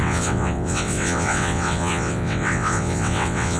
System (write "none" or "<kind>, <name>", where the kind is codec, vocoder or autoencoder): vocoder, WaveNeXt